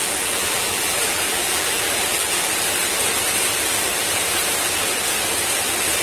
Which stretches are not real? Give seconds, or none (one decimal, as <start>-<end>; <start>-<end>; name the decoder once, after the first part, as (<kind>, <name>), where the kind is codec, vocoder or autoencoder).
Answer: 0.0-2.3 (vocoder, BigVGAN v2)